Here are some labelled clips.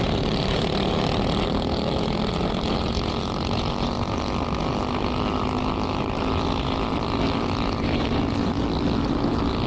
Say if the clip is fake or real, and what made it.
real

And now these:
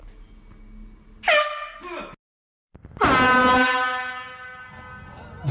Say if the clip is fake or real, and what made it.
real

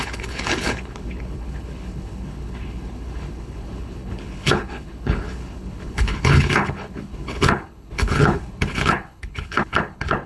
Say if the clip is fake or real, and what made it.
fake, codec, HILCodec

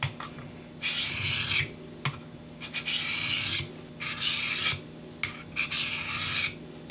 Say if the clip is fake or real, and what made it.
real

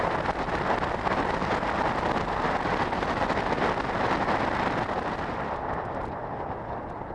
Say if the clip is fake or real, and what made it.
real